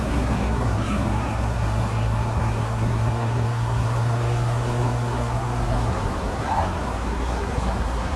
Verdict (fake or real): fake